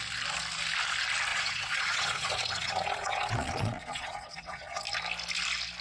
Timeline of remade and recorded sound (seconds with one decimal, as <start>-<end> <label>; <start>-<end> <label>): 0.0-1.3 recorded; 1.3-4.8 remade; 4.8-5.8 recorded